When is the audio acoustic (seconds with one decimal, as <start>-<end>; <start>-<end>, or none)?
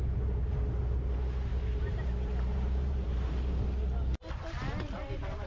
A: 0.0-1.5; 3.3-5.5